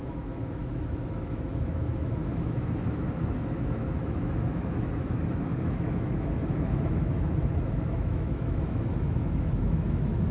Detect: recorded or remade remade